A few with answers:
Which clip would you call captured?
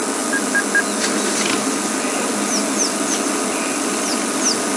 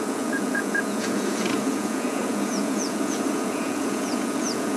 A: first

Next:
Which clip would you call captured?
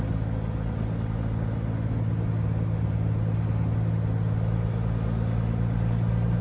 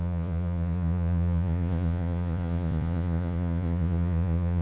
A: first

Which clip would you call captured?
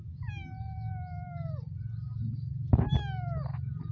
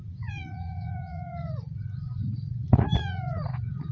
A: first